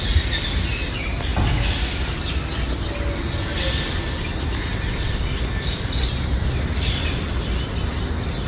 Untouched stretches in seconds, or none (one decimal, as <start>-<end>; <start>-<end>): 0.0-8.5